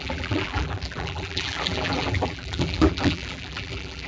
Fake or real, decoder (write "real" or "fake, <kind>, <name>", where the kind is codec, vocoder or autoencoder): fake, vocoder, BigVGAN v2